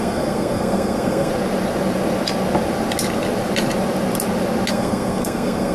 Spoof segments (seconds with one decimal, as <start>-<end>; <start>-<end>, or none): 0.0-1.3; 4.7-5.7